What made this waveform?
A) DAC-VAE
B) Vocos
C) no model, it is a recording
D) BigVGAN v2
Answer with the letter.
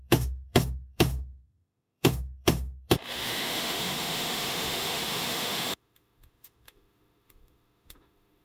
A